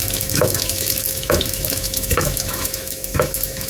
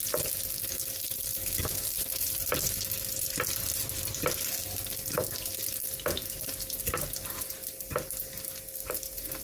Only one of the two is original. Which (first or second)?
second